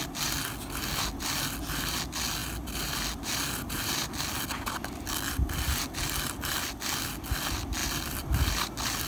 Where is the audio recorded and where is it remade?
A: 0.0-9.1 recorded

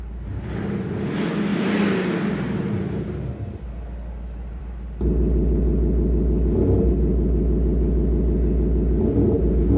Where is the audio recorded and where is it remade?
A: 0.0-9.8 recorded

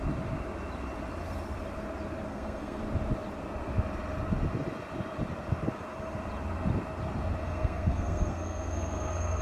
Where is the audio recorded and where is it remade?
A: 0.0-2.3 recorded; 2.3-2.8 remade; 2.8-7.4 recorded; 7.4-9.4 remade